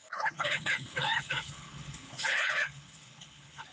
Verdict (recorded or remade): remade